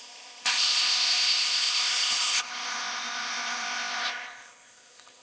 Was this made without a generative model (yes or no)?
no